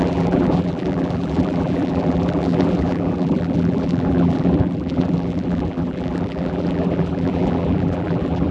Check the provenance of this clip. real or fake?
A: fake